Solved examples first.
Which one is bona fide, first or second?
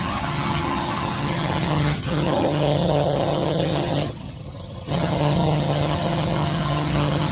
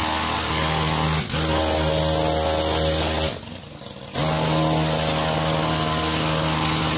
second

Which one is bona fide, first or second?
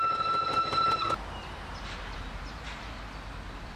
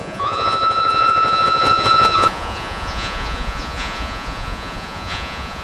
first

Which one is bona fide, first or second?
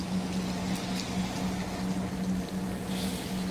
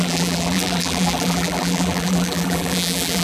first